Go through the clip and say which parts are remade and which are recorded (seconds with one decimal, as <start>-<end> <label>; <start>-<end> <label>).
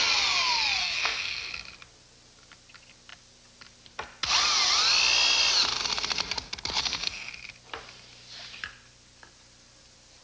0.0-0.8 recorded; 0.8-1.5 remade; 1.5-6.8 recorded; 6.8-7.3 remade; 7.3-10.2 recorded